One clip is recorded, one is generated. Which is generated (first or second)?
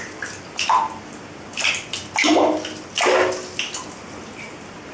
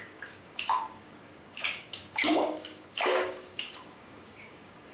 second